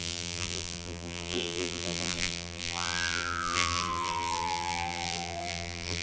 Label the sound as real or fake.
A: fake